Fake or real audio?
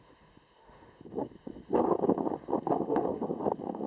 fake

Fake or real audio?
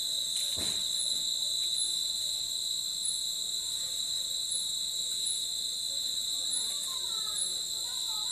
real